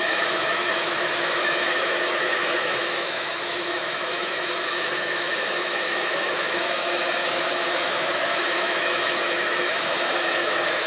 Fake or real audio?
fake